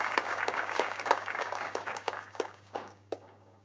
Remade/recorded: remade